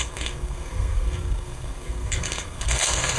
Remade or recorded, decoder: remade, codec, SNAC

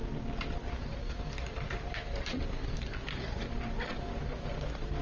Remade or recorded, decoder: recorded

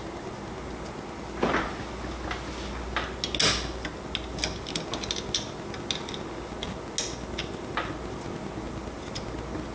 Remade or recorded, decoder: recorded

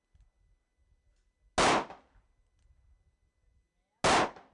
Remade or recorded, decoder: recorded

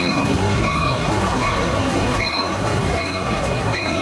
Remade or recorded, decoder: remade, codec, SNAC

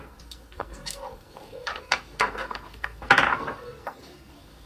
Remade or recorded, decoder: remade, codec, SNAC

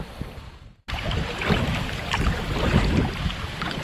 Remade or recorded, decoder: recorded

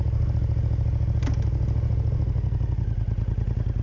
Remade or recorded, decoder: recorded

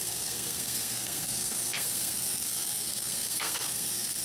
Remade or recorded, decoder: remade, codec, SNAC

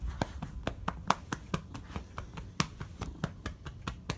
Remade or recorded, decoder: recorded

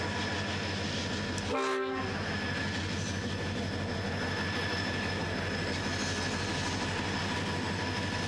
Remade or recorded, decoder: recorded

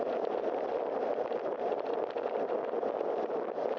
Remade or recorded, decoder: recorded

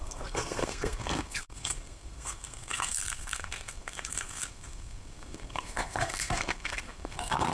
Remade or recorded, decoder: remade, codec, SNAC